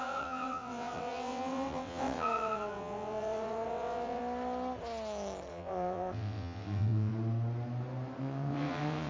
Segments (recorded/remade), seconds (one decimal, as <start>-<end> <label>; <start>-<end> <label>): 0.0-4.2 remade; 4.2-5.5 recorded; 5.5-7.1 remade; 7.1-8.2 recorded; 8.2-9.1 remade